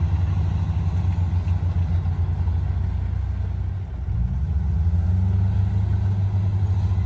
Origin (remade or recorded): recorded